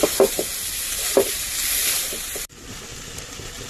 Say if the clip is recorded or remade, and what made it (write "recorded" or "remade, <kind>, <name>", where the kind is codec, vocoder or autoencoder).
recorded